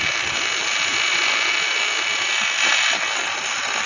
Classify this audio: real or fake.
real